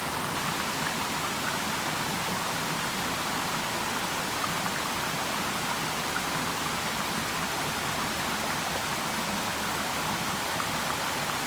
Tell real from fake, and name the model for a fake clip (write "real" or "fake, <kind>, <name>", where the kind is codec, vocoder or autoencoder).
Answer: real